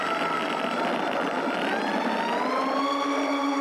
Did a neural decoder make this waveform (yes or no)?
no